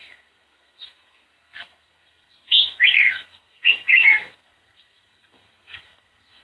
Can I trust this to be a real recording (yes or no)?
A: no